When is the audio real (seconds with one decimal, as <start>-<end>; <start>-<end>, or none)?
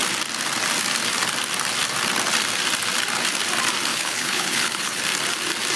0.0-3.9; 5.0-5.8